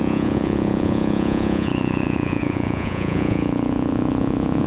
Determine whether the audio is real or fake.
fake